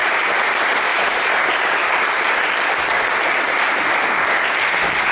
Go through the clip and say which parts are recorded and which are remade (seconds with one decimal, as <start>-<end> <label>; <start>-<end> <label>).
0.0-0.5 remade; 0.5-0.9 recorded; 0.9-1.8 remade; 1.8-5.1 recorded